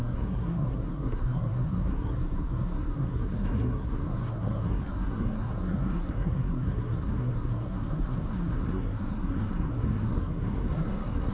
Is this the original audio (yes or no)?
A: no